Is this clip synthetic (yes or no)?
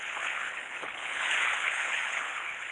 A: yes